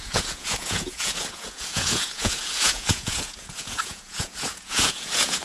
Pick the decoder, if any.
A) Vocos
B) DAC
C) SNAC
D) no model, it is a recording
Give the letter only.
A